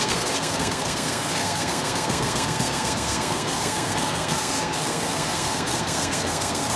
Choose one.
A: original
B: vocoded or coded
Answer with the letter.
B